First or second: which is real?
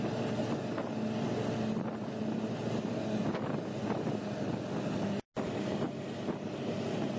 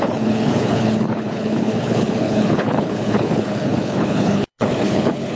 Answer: first